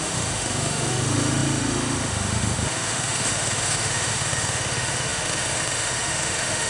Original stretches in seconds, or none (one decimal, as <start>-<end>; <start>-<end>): none